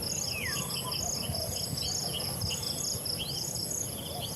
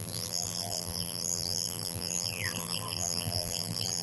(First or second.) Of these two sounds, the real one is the first